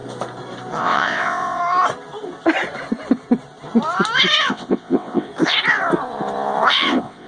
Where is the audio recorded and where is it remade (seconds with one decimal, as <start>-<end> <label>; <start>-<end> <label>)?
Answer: 0.0-0.8 recorded; 0.8-1.6 remade; 1.6-4.4 recorded; 4.4-5.3 remade; 5.3-6.7 recorded; 6.7-7.3 remade